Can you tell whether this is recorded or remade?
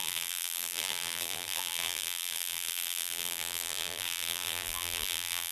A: remade